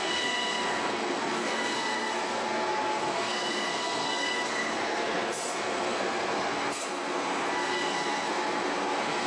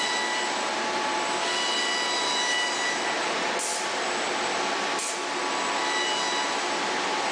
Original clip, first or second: second